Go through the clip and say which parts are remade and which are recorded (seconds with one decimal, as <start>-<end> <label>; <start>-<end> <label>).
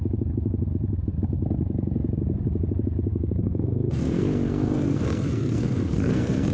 0.0-3.1 recorded; 3.1-6.5 remade